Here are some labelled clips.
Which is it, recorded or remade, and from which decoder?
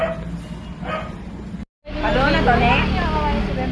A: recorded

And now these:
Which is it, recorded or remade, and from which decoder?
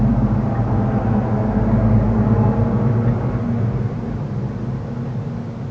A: recorded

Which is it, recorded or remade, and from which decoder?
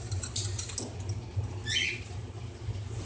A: recorded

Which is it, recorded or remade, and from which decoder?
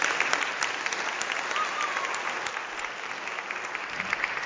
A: recorded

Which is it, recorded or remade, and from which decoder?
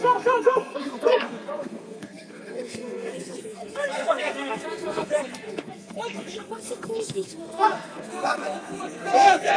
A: remade, codec, SNAC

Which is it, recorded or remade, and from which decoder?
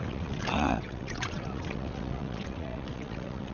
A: remade, vocoder, WaveNeXt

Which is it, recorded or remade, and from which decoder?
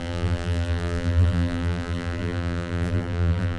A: remade, vocoder, BigVGAN v2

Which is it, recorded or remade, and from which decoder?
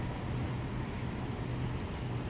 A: recorded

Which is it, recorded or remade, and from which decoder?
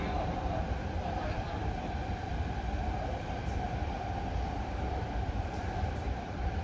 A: remade, vocoder, BigVGAN v2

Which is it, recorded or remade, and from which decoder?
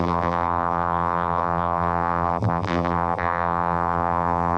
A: remade, vocoder, BigVGAN v2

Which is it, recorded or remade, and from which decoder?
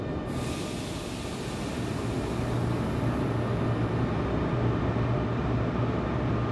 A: recorded